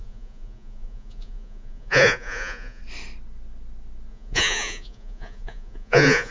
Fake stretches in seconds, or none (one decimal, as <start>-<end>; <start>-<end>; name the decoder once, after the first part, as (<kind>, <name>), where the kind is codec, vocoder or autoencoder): 0.0-2.8 (vocoder, Vocos); 4.1-6.3